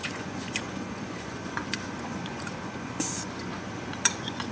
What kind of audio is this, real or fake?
fake